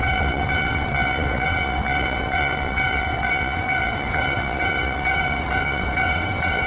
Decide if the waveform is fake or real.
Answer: fake